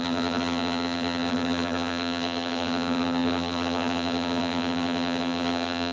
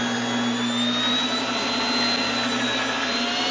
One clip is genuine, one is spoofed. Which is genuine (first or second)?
second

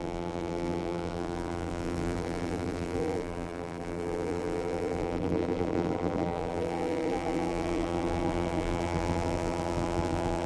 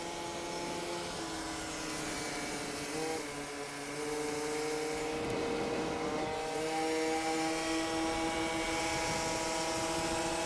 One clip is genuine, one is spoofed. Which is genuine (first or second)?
second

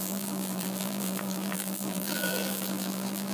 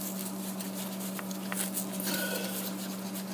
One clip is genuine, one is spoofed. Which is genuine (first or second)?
second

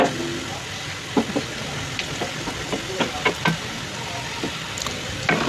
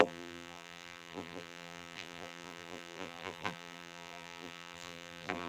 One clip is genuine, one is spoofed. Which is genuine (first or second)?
first